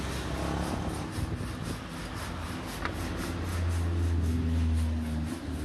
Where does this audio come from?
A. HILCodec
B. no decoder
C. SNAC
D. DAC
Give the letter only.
B